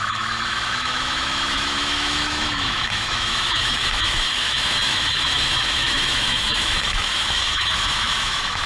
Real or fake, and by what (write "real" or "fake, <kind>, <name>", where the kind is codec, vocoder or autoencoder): fake, autoencoder, DAC-VAE